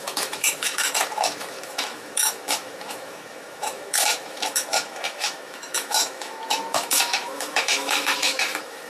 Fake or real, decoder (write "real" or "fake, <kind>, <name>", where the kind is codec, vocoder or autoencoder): fake, autoencoder, DAC-VAE